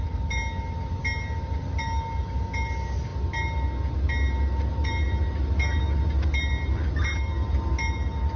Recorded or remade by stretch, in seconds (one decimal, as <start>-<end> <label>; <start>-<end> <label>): 0.0-8.4 recorded